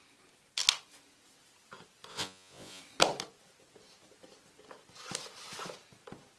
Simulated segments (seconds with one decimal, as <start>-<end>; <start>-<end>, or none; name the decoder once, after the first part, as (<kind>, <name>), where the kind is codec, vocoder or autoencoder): 2.1-2.8 (vocoder, Vocos)

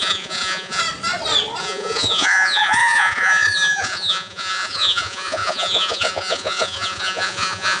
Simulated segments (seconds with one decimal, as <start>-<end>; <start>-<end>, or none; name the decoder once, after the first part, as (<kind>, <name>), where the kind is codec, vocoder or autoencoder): 0.0-0.8 (vocoder, Vocos); 1.6-7.8

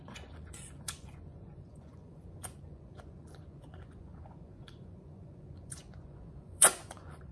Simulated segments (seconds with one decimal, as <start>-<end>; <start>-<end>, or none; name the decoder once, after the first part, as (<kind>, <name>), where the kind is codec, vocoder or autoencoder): 0.0-7.3 (vocoder, Vocos)

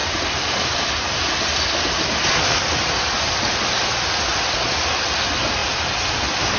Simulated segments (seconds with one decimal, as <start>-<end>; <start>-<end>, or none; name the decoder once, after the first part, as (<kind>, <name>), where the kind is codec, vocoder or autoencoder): none

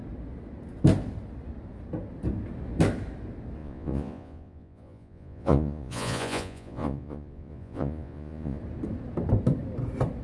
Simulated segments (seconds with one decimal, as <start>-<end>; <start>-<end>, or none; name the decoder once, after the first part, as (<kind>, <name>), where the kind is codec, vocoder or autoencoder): 3.6-8.6 (vocoder, Vocos)

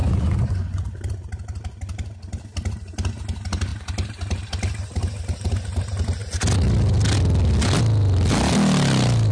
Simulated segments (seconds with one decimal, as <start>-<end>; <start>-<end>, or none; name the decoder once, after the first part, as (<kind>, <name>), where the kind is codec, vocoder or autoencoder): 0.0-0.8 (vocoder, Vocos)

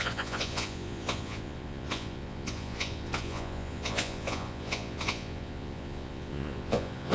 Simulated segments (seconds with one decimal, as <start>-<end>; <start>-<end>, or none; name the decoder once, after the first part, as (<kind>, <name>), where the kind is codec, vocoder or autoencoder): 0.0-7.1 (vocoder, Vocos)

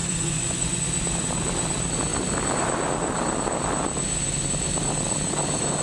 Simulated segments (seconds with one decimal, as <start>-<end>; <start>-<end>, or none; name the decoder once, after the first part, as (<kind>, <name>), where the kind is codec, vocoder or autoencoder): 0.0-0.8 (vocoder, Vocos)